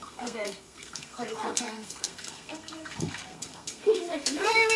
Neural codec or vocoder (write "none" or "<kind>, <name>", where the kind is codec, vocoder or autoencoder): codec, SNAC